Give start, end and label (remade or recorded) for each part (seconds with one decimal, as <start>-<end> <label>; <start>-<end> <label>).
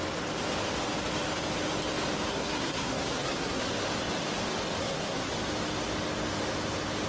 0.0-2.3 recorded; 2.3-3.7 remade; 3.7-4.8 recorded; 4.8-5.3 remade; 5.3-7.1 recorded